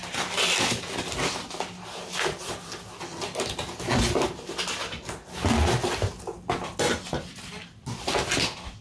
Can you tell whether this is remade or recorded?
recorded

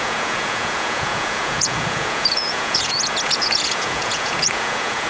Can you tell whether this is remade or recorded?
remade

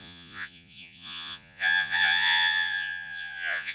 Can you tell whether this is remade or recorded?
remade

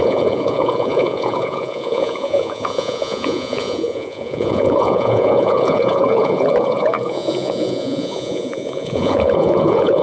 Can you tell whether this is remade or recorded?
remade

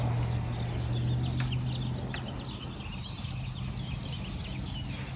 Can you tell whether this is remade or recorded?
recorded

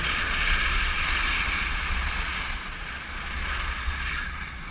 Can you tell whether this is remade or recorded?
remade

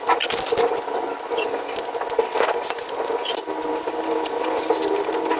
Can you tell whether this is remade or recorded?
recorded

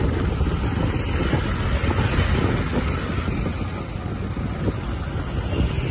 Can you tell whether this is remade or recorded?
recorded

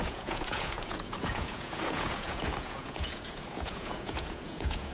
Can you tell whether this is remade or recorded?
remade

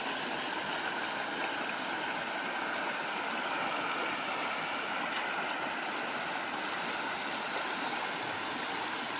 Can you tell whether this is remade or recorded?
recorded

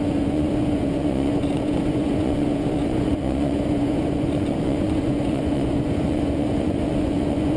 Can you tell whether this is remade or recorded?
remade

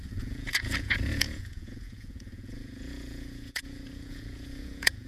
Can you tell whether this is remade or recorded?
remade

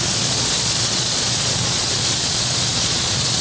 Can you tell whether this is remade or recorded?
remade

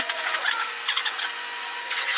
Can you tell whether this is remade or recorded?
remade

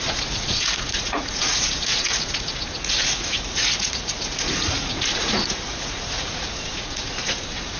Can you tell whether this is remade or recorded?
remade